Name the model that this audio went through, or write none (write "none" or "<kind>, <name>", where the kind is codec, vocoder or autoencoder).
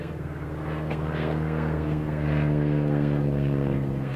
codec, SNAC